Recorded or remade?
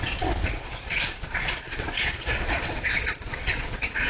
remade